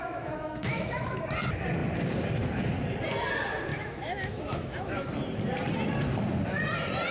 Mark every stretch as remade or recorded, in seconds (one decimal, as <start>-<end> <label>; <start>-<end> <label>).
0.0-1.2 remade; 1.2-3.7 recorded; 3.7-5.1 remade; 5.1-7.1 recorded